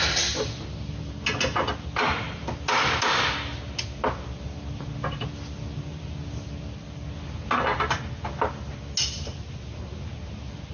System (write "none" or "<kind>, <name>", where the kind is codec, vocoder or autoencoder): none